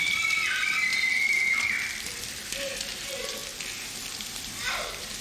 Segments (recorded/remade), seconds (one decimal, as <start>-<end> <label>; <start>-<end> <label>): 0.0-3.4 remade; 3.4-4.1 recorded; 4.1-5.2 remade